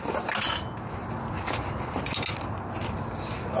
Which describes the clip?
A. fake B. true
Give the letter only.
B